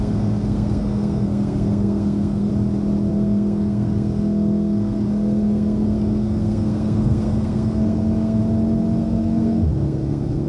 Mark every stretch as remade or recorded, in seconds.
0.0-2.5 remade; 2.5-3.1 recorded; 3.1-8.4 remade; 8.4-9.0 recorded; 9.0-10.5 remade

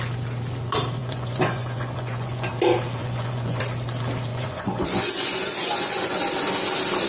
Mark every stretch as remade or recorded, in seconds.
0.0-1.0 recorded; 1.0-2.5 remade; 2.5-3.0 recorded; 3.0-3.6 remade; 3.6-4.3 recorded; 4.3-6.2 remade; 6.2-7.1 recorded

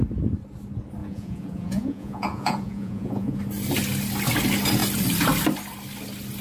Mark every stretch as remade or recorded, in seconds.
0.0-1.0 recorded; 1.0-3.4 remade; 3.4-6.4 recorded

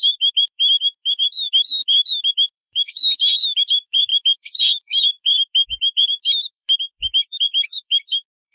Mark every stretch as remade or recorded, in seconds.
0.0-8.5 remade

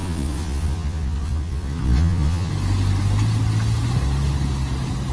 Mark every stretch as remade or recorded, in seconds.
0.0-2.5 remade; 2.5-5.1 recorded

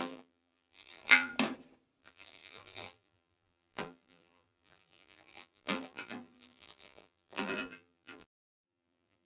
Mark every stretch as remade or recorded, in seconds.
0.0-1.3 remade; 1.3-2.0 recorded; 2.0-9.3 remade

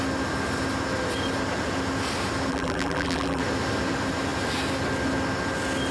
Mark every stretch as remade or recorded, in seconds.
0.0-2.5 recorded; 2.5-3.4 remade; 3.4-5.9 recorded